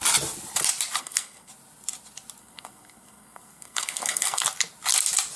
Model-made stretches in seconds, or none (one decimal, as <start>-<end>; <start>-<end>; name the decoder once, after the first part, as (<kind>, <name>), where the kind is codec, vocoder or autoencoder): 1.0-1.5 (codec, SNAC); 2.4-4.4